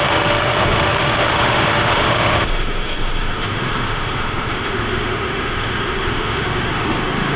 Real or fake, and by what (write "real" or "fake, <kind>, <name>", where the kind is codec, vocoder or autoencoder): fake, autoencoder, DAC-VAE